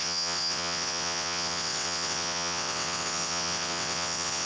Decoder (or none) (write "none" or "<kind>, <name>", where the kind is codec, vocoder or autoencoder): vocoder, WaveNeXt